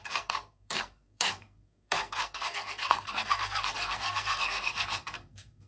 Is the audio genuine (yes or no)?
no